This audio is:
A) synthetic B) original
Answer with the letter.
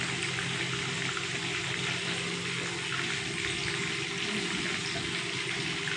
B